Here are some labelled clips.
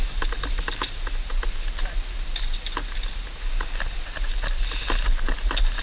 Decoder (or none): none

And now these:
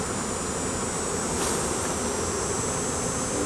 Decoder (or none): none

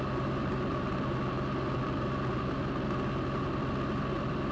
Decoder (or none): none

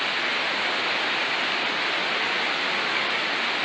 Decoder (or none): none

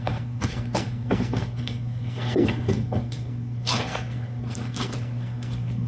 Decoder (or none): codec, SNAC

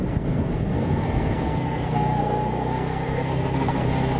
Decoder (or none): codec, SNAC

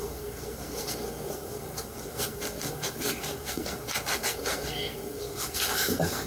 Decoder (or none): codec, SNAC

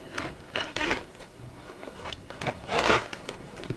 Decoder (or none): codec, SNAC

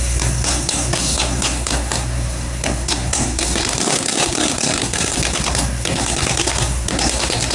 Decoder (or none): codec, SNAC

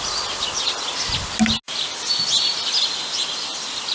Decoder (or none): none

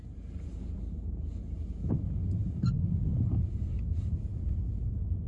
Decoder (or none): none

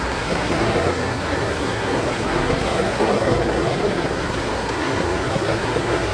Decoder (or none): codec, SNAC